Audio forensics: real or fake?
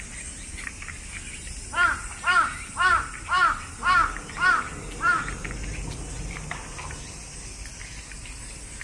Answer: real